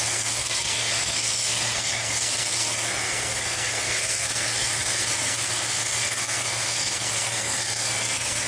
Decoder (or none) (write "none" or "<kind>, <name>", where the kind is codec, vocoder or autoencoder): codec, SNAC